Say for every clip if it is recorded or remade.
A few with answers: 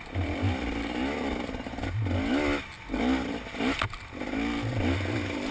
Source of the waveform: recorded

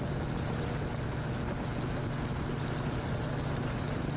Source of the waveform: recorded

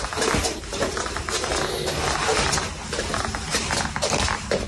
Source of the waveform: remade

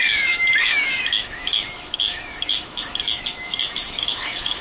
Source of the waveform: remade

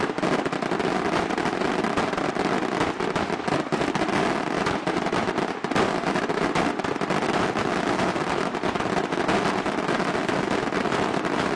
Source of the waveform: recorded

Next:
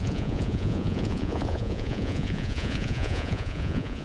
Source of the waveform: remade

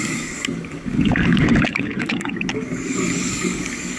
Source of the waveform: remade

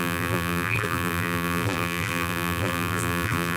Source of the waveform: remade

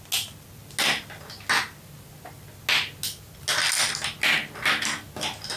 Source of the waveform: recorded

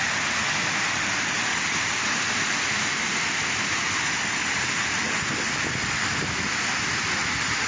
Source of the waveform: recorded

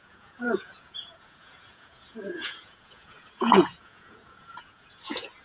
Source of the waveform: remade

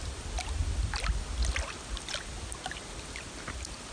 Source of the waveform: recorded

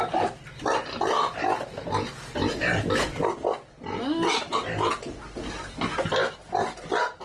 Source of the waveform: recorded